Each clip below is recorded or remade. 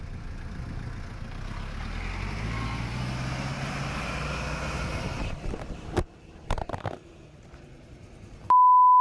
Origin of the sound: recorded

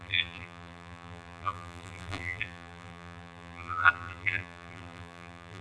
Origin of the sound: remade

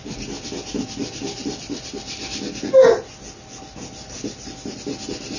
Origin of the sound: recorded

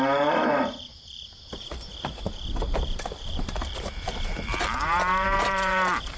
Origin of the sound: remade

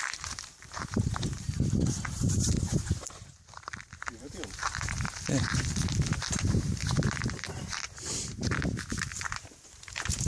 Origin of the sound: remade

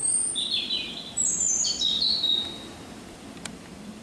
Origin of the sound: remade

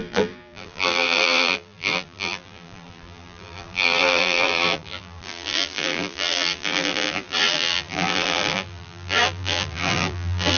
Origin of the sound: remade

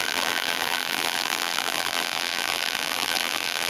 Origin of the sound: remade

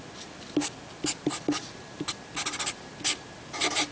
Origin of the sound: recorded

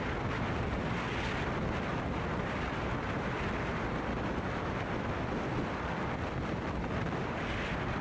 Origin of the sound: recorded